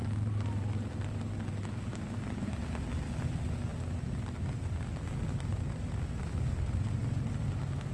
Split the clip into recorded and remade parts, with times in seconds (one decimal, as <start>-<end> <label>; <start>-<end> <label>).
0.0-7.9 recorded